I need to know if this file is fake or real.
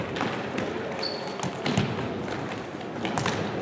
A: real